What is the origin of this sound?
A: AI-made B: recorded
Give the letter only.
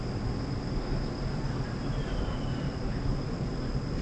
B